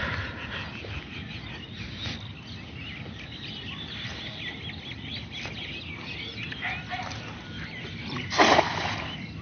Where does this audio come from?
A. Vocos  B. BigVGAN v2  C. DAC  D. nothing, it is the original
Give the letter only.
D